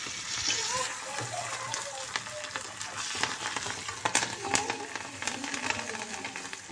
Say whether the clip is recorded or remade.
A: recorded